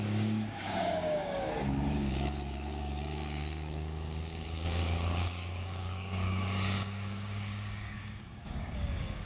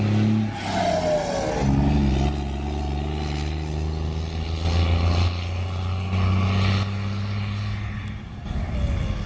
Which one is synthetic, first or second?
first